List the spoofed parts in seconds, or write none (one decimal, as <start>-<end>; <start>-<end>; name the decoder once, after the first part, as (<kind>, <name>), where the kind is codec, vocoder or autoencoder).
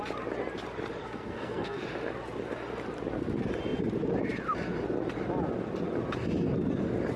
1.0-1.8 (codec, SNAC)